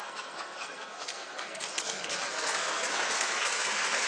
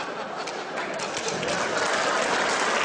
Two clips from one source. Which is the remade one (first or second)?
first